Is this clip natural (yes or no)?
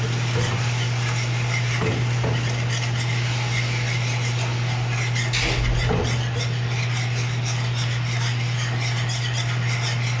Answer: yes